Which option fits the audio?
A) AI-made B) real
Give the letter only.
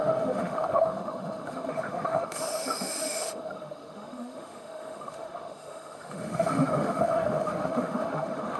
A